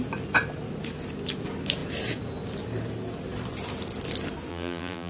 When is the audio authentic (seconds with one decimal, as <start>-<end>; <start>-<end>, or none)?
0.0-4.5

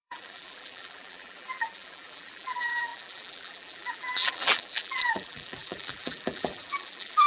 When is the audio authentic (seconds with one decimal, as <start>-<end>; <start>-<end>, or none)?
none

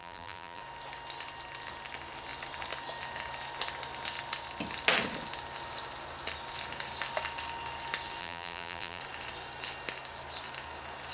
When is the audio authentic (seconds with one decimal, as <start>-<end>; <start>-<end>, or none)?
0.6-8.2; 9.0-11.1